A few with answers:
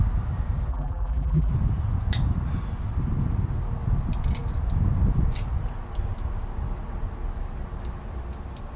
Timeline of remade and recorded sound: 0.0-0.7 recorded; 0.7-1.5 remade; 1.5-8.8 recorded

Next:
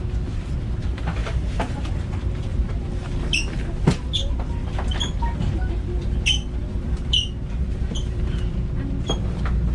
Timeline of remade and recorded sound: 0.0-1.2 recorded; 1.2-1.9 remade; 1.9-2.5 recorded; 2.5-3.4 remade; 3.4-6.6 recorded; 6.6-8.5 remade; 8.5-9.7 recorded

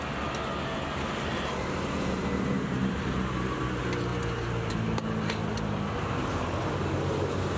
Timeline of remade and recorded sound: 0.0-1.3 recorded; 1.3-3.6 remade; 3.6-5.4 recorded; 5.4-6.8 remade; 6.8-7.6 recorded

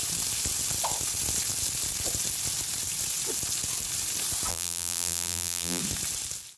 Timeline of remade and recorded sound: 0.0-4.5 recorded; 4.5-5.8 remade; 5.8-6.6 recorded

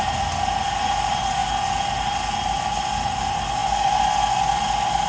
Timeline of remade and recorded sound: 0.0-3.6 recorded; 3.6-4.1 remade; 4.1-5.1 recorded

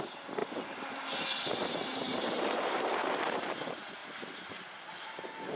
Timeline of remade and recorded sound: 0.0-0.4 remade; 0.4-1.4 recorded; 1.4-4.0 remade; 4.0-5.0 recorded; 5.0-5.6 remade

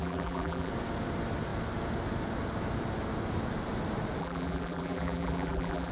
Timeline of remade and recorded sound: 0.0-0.7 remade; 0.7-4.2 recorded; 4.2-5.9 remade

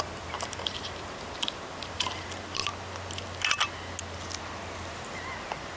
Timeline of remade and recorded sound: 0.0-2.6 remade; 2.6-4.9 recorded; 4.9-5.8 remade